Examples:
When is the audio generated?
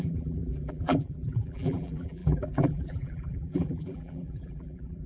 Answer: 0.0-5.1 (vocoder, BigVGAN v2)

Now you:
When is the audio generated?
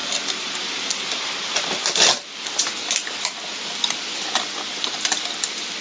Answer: 0.0-2.1 (vocoder, BigVGAN v2)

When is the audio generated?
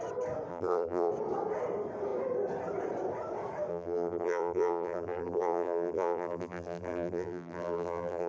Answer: 0.5-1.1 (vocoder, BigVGAN v2); 3.7-8.3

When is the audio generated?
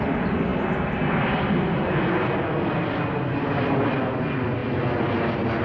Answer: none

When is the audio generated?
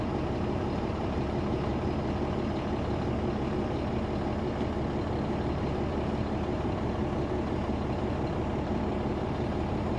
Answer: 0.0-1.7 (vocoder, BigVGAN v2); 5.4-7.0; 8.7-10.0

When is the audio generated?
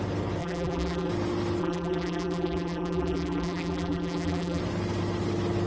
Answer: 0.4-1.1 (vocoder, BigVGAN v2); 1.6-4.6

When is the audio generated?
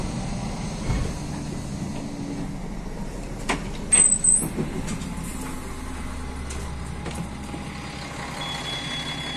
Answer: none